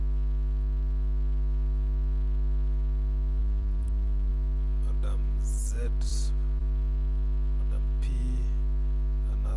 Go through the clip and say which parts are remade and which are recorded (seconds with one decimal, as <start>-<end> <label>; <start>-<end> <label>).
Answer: 0.0-3.4 recorded; 3.4-4.3 remade; 4.3-9.6 recorded